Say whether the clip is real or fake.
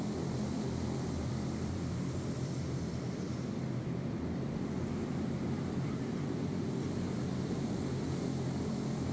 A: fake